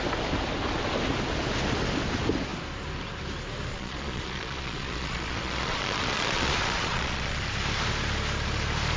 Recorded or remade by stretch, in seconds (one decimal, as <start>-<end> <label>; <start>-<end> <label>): 0.0-3.7 recorded; 3.7-7.4 remade; 7.4-9.0 recorded